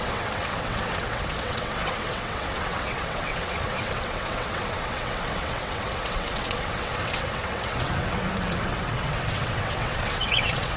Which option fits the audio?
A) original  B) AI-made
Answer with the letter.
B